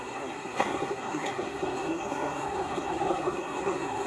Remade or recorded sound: remade